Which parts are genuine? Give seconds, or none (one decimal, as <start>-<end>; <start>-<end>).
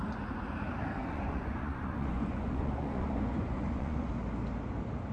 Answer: 0.0-1.0; 4.1-5.1